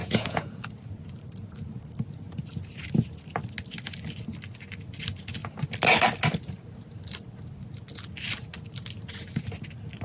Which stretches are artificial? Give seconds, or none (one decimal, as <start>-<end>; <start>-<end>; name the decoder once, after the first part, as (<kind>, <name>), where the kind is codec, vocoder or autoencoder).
0.0-0.6 (vocoder, Vocos)